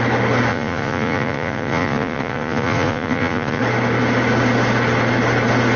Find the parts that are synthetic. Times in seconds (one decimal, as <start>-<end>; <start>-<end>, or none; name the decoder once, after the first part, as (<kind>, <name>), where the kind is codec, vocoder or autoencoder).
0.5-3.6 (vocoder, Vocos)